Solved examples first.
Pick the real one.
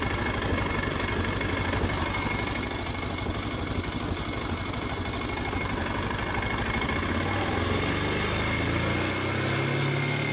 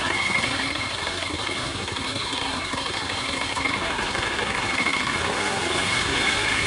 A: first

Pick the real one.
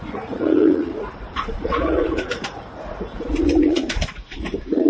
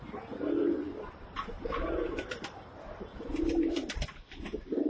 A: second